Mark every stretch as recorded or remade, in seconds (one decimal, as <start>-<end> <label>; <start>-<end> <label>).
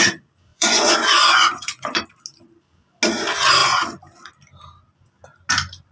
0.0-0.5 recorded; 0.5-2.0 remade; 2.0-5.9 recorded